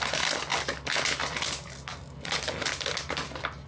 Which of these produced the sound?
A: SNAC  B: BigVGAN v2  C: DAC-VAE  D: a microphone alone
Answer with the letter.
D